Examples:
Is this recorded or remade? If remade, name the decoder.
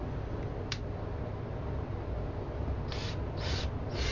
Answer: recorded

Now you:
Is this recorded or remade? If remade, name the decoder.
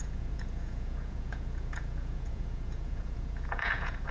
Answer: remade, vocoder, Vocos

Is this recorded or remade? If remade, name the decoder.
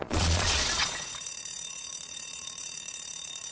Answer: remade, vocoder, Vocos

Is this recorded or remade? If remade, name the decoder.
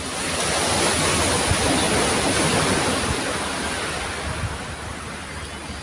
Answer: recorded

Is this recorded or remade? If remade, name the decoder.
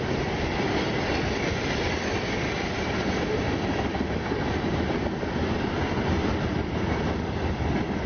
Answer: recorded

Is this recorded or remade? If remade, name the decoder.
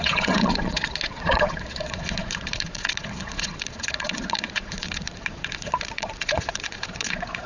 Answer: remade, vocoder, Vocos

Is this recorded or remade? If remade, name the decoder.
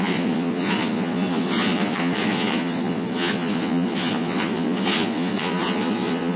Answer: remade, vocoder, Vocos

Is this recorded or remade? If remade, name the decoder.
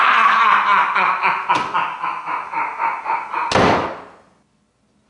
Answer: recorded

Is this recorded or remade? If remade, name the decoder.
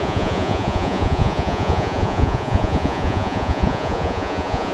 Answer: remade, vocoder, Vocos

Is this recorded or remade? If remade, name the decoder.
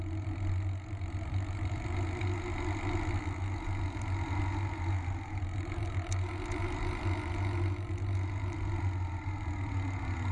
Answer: recorded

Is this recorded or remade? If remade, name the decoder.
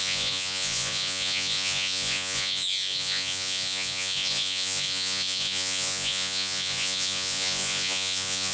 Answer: remade, vocoder, Vocos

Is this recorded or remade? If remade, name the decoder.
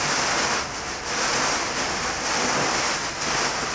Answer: recorded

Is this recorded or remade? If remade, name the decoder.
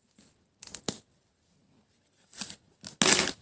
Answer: recorded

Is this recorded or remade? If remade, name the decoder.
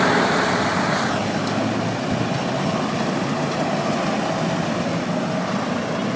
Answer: recorded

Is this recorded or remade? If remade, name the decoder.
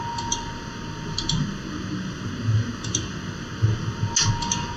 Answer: recorded